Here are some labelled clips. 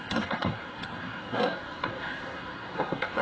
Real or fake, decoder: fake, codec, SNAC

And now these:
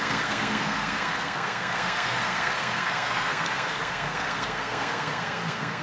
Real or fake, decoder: fake, codec, SNAC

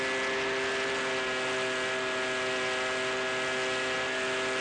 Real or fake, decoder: real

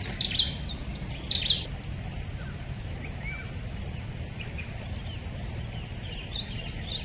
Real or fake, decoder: real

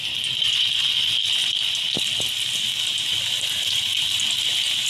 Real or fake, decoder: real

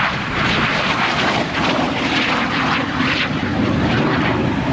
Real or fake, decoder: real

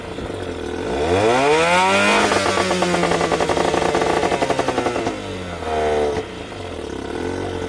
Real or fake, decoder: real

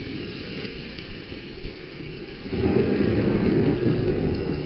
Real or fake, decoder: fake, codec, SNAC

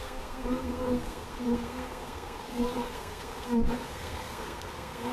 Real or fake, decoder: fake, codec, SNAC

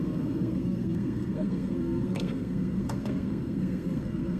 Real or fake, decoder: fake, codec, SNAC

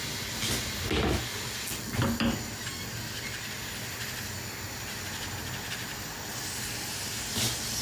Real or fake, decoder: real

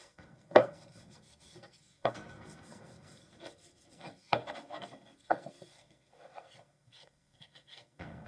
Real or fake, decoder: fake, codec, SNAC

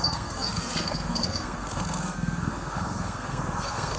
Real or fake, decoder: fake, codec, SNAC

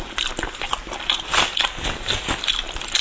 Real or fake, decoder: real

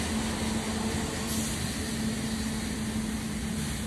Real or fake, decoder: real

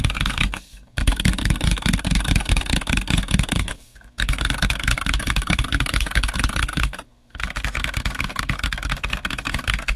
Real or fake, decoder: fake, codec, SNAC